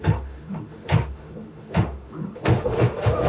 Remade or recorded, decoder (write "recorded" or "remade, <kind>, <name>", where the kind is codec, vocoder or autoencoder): remade, autoencoder, DAC-VAE